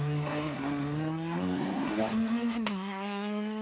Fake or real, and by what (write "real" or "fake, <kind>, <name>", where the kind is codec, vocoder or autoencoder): fake, codec, SNAC